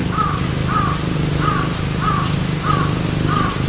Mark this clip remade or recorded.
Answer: recorded